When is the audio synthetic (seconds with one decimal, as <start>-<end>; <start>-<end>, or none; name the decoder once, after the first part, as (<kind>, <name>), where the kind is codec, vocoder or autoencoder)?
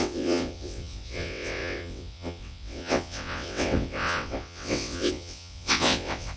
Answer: 0.0-6.4 (vocoder, WaveNeXt)